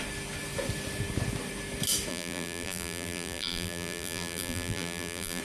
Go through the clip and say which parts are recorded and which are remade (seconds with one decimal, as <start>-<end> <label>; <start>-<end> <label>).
0.0-2.1 recorded; 2.1-5.4 remade